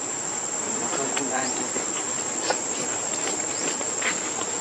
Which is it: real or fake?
real